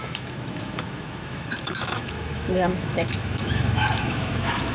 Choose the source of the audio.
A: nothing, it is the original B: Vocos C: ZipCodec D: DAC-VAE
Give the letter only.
D